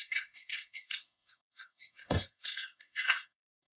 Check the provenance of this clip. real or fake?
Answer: fake